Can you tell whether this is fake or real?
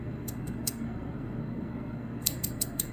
fake